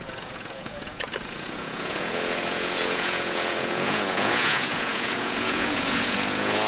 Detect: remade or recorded remade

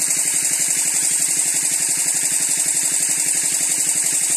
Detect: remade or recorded recorded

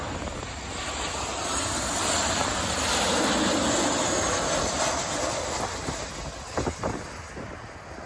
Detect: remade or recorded recorded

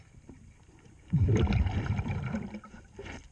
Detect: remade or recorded recorded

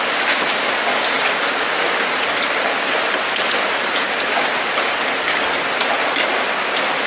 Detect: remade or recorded recorded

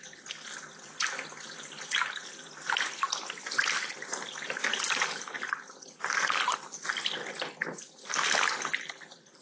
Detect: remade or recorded recorded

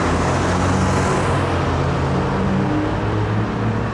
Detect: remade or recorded recorded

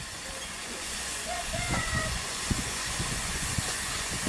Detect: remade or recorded remade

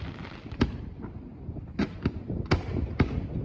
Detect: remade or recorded recorded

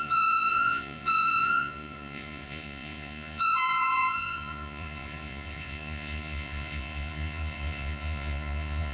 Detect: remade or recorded remade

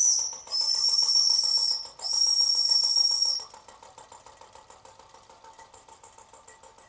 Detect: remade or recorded recorded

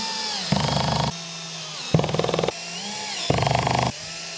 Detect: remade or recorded recorded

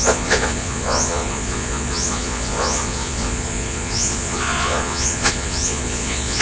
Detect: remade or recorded remade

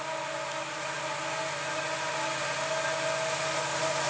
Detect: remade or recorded recorded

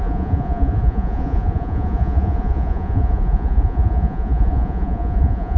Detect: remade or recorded remade